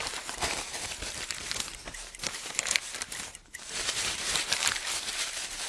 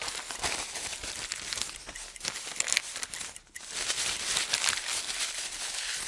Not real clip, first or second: first